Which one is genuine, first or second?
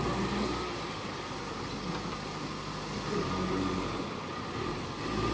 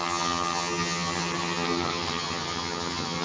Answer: first